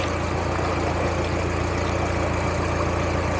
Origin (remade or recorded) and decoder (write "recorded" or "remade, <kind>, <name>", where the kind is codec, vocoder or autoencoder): recorded